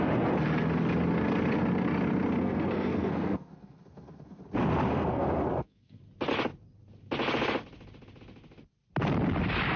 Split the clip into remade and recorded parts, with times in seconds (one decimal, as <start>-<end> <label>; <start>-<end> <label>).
0.0-2.4 recorded; 2.4-4.4 remade; 4.4-4.9 recorded; 4.9-6.0 remade; 6.0-9.8 recorded